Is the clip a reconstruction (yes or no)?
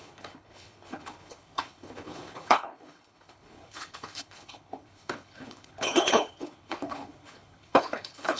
yes